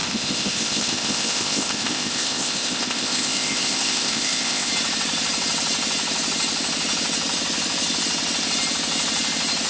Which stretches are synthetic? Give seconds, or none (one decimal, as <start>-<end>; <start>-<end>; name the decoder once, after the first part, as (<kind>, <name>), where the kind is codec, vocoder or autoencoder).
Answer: 0.0-4.7 (codec, ZipCodec)